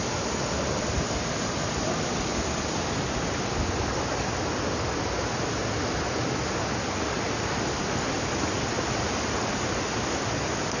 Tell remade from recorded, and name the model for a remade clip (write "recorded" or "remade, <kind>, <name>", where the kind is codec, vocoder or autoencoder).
recorded